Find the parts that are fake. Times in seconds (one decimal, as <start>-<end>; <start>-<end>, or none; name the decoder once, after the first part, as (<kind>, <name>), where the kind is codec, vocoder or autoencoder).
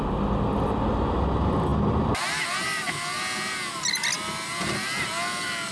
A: none